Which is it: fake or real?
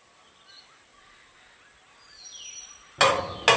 real